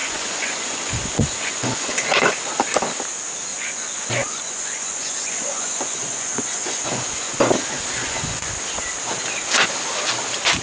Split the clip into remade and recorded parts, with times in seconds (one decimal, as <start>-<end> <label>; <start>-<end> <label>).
0.0-2.3 remade; 2.3-3.5 recorded; 3.5-7.3 remade; 7.3-8.0 recorded; 8.0-8.5 remade; 8.5-10.6 recorded